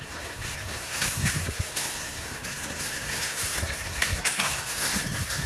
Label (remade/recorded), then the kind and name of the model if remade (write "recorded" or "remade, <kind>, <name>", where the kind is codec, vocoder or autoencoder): remade, codec, SNAC